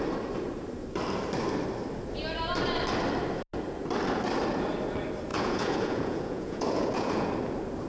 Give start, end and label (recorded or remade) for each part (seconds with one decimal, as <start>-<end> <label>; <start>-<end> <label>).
0.0-5.3 recorded; 5.3-7.3 remade; 7.3-7.9 recorded